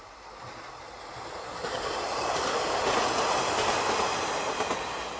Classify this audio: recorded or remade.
recorded